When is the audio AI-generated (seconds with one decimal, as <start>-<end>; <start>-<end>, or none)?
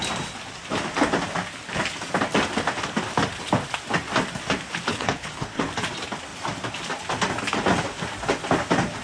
4.9-5.6